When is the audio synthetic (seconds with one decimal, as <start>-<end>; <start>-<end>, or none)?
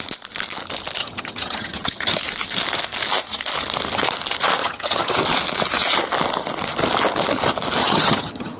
1.0-2.2; 4.6-5.1; 7.8-8.6